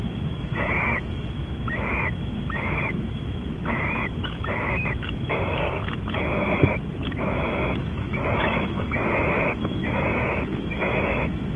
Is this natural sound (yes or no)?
no